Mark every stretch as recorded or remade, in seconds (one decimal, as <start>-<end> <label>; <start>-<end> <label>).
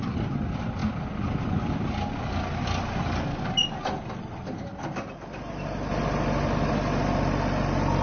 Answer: 0.0-8.0 recorded